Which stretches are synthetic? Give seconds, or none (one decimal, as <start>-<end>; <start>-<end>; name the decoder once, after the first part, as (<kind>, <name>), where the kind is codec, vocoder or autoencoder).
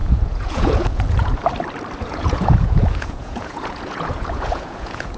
0.0-1.4 (vocoder, Vocos); 2.0-5.2